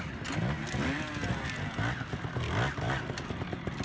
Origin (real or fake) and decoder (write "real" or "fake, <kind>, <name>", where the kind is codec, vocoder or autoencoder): real